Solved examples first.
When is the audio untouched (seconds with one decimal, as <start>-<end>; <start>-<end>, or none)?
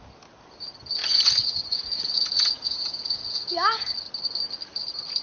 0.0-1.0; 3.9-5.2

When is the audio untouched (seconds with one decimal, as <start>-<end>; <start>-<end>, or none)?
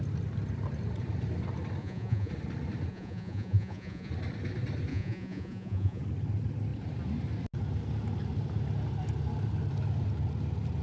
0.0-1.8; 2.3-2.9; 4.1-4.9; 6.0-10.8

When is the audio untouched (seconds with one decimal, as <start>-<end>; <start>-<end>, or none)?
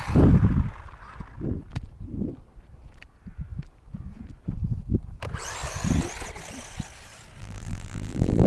0.0-7.4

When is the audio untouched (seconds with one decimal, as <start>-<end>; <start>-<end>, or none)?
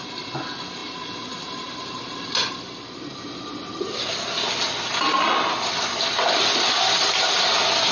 0.0-7.9